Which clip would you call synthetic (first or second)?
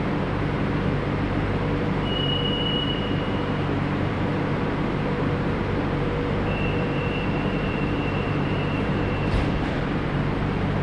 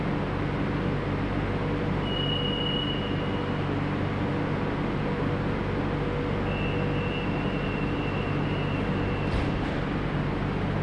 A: first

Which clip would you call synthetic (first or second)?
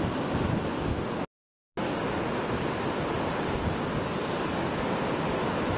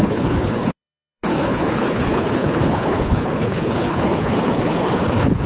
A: second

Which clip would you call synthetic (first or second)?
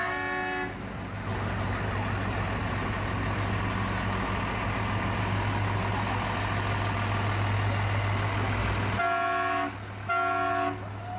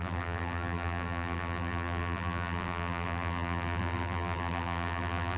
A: second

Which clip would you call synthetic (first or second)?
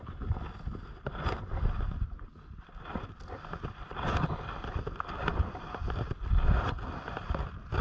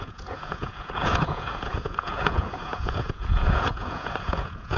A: second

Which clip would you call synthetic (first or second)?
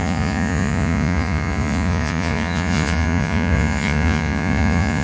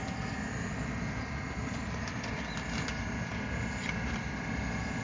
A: first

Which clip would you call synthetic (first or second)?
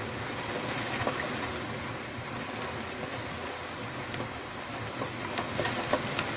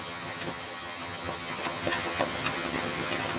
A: second